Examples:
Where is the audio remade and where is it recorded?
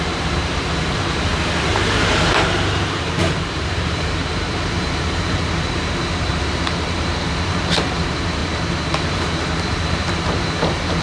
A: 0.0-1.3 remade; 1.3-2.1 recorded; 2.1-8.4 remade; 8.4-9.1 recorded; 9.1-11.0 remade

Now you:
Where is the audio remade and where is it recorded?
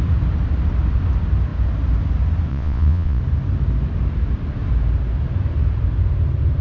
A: 0.0-2.5 recorded; 2.5-3.2 remade; 3.2-6.6 recorded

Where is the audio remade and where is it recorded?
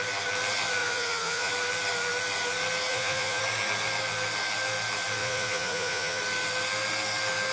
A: 0.0-0.8 recorded; 0.8-1.5 remade; 1.5-2.9 recorded; 2.9-3.4 remade; 3.4-5.2 recorded; 5.2-6.2 remade; 6.2-7.5 recorded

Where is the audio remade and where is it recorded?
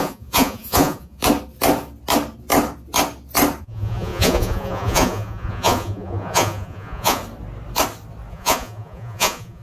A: 0.0-1.2 remade; 1.2-3.6 recorded; 3.6-7.2 remade; 7.2-8.3 recorded; 8.3-9.6 remade